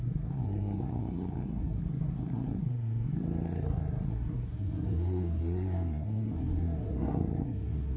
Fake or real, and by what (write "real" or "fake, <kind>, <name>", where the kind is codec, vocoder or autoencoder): fake, codec, SNAC